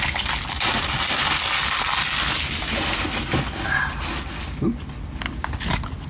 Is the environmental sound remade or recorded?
recorded